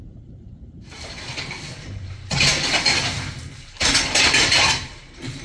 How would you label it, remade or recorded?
remade